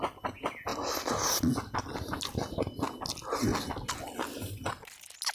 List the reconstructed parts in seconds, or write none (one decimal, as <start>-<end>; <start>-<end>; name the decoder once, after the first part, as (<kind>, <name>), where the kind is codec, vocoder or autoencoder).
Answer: none